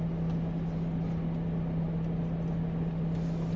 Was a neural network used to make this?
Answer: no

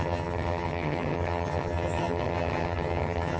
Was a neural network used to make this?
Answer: yes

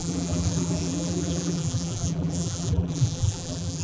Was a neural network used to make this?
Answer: yes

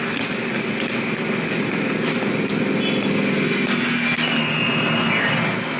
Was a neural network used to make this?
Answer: no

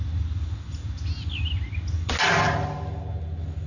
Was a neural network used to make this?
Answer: no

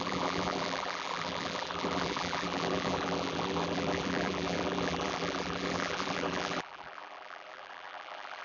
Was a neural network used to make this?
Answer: yes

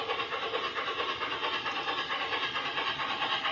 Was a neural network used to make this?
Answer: no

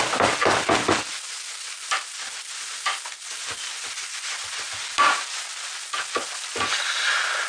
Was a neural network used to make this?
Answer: no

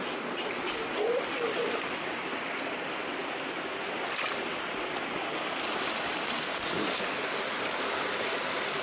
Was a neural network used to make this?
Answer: no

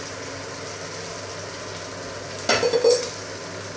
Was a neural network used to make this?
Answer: no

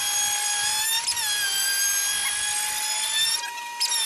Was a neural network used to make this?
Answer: no